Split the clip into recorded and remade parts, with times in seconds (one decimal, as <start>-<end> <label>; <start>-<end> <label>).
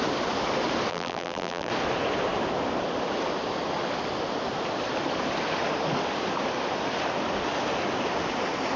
0.0-0.9 recorded; 0.9-1.7 remade; 1.7-8.8 recorded